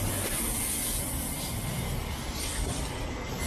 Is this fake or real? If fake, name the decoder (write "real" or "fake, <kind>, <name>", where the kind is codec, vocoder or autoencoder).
real